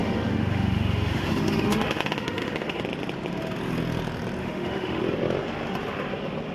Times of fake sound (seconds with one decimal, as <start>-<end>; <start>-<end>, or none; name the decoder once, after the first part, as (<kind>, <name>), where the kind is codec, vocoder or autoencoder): 0.0-2.8 (autoencoder, DAC-VAE); 4.4-5.0